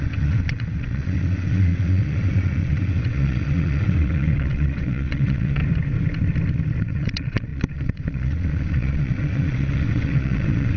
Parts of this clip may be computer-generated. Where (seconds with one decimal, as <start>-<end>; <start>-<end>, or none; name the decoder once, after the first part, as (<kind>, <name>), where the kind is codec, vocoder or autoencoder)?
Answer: 0.0-5.6 (vocoder, WaveNeXt); 6.8-10.8